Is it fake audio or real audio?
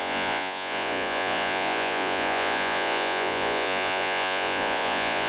fake